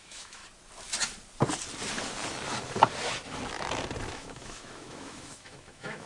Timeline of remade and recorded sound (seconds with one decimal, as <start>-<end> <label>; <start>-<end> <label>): 0.0-0.4 remade; 0.4-4.1 recorded; 4.1-6.1 remade